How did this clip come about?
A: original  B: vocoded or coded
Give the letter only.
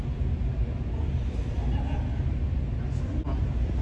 A